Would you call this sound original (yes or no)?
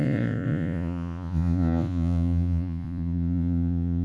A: no